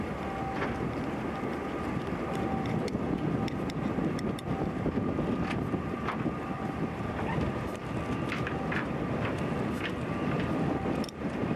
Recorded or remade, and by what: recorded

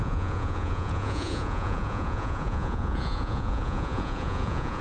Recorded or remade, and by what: remade, vocoder, Vocos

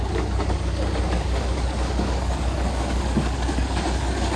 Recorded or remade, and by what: remade, codec, DAC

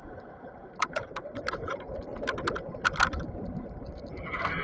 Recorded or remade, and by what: recorded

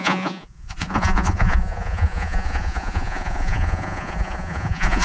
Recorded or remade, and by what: remade, vocoder, Vocos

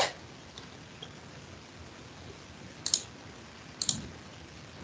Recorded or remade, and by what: recorded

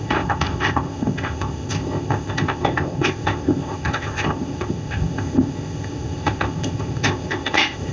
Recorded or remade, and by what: remade, codec, ZipCodec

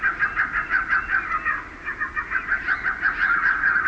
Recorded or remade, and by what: recorded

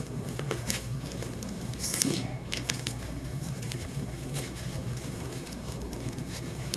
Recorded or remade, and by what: remade, codec, SNAC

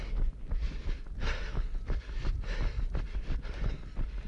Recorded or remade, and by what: recorded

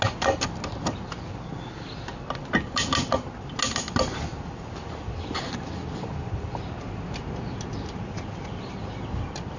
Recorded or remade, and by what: recorded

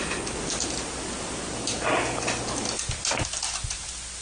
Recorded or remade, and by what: recorded